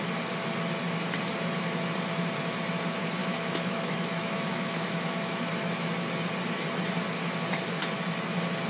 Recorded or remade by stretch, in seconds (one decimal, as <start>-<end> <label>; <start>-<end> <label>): 0.0-3.2 recorded; 3.2-5.5 remade; 5.5-8.7 recorded